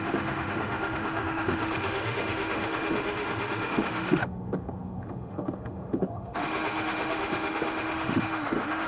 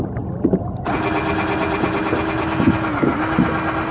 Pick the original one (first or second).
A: second